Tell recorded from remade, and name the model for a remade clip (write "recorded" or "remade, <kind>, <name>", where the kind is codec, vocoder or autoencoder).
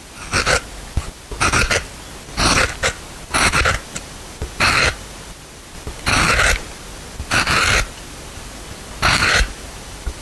recorded